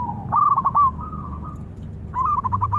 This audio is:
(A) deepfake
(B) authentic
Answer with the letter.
A